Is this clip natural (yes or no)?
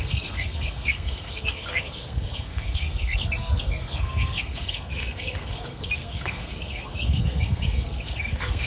no